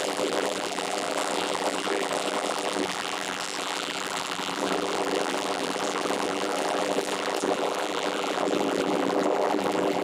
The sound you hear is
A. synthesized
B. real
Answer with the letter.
A